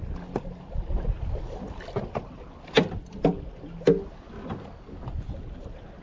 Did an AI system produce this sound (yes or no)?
no